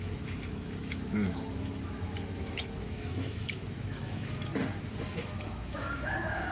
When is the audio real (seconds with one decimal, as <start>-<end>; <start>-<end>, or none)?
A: 4.5-5.1